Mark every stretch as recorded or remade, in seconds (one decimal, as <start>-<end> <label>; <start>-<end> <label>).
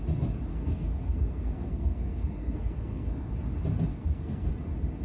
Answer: 0.0-0.5 recorded; 0.5-3.3 remade; 3.3-3.9 recorded; 3.9-4.5 remade; 4.5-5.0 recorded